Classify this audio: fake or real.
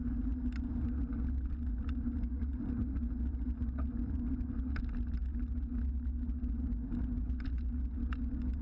real